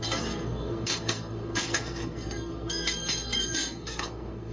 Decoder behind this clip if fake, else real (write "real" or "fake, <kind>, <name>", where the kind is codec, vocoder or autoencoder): fake, codec, SNAC